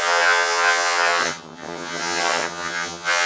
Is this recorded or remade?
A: remade